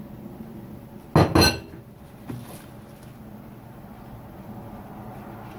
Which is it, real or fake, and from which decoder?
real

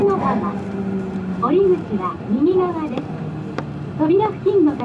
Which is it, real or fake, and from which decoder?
real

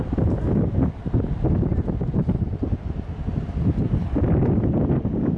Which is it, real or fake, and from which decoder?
real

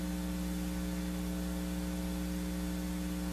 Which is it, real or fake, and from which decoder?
real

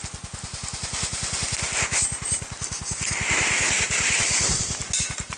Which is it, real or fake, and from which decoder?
real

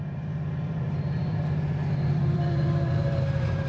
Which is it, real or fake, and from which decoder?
fake, vocoder, BigVGAN v2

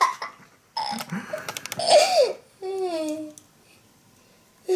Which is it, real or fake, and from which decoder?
real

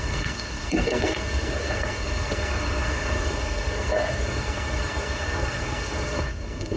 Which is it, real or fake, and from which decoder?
fake, codec, SNAC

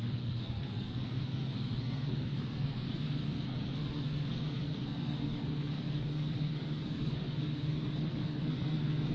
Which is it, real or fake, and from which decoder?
fake, codec, SNAC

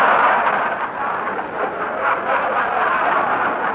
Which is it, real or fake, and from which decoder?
real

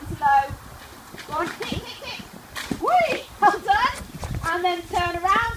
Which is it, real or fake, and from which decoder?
fake, vocoder, BigVGAN v2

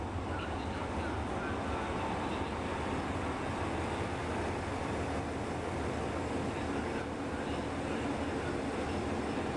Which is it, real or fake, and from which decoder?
real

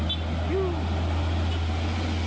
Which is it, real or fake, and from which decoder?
real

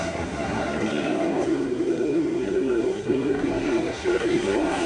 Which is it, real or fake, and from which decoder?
fake, codec, SNAC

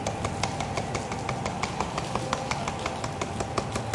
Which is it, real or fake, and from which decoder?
real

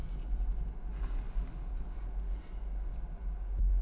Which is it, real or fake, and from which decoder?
real